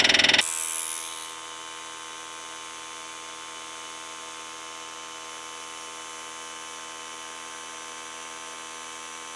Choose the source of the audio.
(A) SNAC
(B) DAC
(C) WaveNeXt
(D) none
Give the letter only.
D